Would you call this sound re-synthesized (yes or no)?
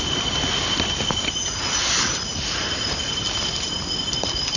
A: no